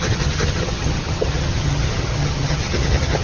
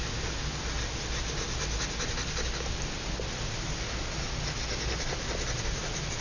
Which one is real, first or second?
second